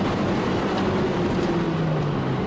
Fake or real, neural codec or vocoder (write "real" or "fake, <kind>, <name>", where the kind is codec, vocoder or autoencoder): real